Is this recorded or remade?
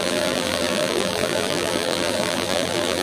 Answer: remade